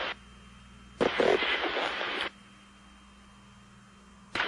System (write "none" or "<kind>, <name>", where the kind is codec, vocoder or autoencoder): none